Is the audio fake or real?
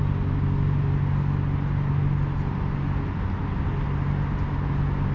real